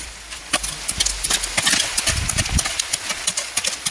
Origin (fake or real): real